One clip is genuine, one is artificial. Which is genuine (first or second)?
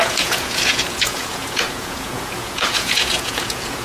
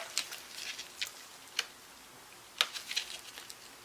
second